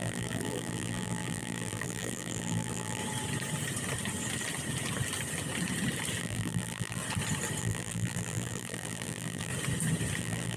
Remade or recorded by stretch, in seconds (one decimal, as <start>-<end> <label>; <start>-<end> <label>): 0.0-3.0 remade; 3.0-6.2 recorded; 6.2-7.0 remade; 7.0-7.6 recorded; 7.6-9.5 remade; 9.5-10.2 recorded; 10.2-10.6 remade